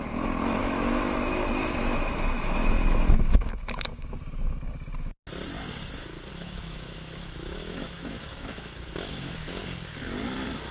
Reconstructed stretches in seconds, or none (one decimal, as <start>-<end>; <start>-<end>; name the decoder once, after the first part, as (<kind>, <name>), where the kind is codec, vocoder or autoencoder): 0.6-4.1 (autoencoder, DAC-VAE); 6.3-9.6